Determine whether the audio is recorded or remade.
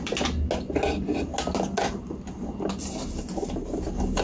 recorded